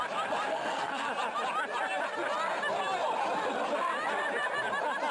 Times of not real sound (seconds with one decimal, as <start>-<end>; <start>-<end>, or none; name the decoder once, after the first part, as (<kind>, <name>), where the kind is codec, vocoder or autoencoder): 0.5-1.1 (codec, SNAC)